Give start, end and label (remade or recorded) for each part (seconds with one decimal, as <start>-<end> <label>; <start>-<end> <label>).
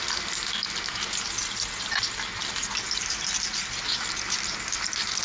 0.0-5.2 recorded